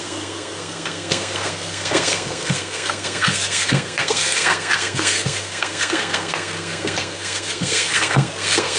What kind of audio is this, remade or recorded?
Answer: remade